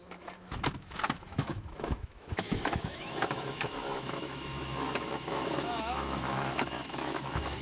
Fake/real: fake